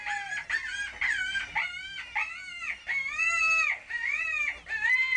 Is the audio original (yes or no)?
yes